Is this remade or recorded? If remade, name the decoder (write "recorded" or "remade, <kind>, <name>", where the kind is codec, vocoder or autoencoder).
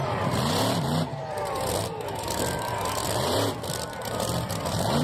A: remade, vocoder, BigVGAN v2